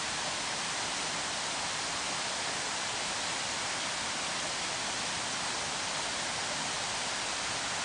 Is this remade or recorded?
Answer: recorded